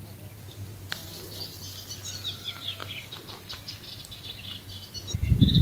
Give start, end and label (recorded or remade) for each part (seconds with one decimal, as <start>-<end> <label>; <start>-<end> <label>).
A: 0.0-1.0 recorded; 1.0-1.6 remade; 1.6-5.6 recorded